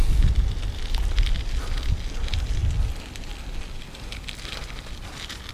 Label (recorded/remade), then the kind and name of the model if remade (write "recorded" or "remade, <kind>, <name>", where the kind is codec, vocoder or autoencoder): recorded